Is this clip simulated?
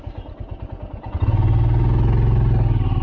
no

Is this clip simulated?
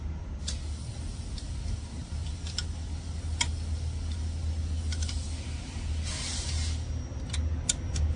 no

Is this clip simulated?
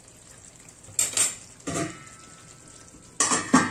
no